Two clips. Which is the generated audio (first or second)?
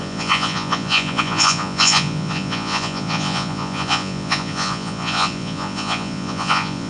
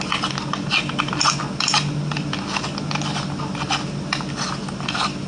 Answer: first